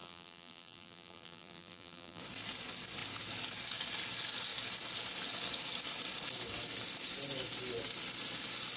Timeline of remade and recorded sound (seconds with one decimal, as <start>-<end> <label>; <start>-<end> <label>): 0.0-2.2 remade; 2.2-8.8 recorded